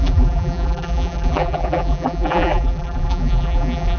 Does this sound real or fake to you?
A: fake